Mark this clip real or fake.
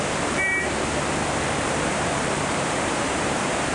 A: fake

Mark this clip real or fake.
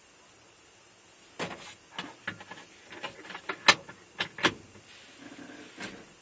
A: real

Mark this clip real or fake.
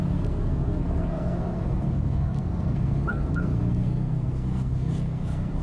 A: fake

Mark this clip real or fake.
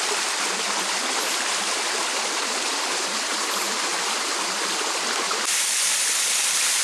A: real